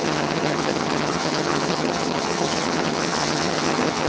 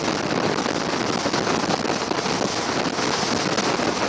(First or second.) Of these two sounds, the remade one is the first